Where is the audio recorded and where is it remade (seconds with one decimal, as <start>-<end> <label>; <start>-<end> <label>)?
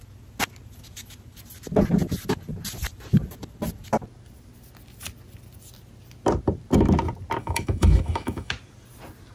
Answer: 0.0-7.4 recorded; 7.4-8.5 remade; 8.5-9.3 recorded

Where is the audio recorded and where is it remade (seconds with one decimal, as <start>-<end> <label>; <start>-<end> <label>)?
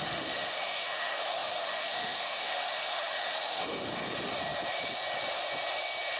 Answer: 0.0-3.9 remade; 3.9-6.2 recorded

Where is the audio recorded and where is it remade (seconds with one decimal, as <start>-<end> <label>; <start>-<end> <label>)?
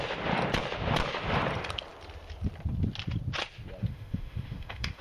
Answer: 0.0-3.8 recorded; 3.8-5.0 remade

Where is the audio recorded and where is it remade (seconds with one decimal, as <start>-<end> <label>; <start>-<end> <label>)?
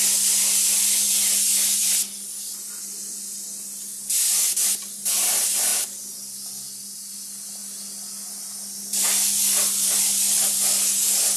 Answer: 0.0-11.4 recorded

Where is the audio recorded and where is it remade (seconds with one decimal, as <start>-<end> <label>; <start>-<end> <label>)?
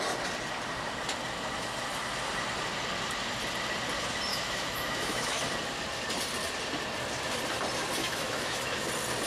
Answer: 0.0-4.3 recorded; 4.3-5.4 remade; 5.4-8.0 recorded; 8.0-8.9 remade; 8.9-9.3 recorded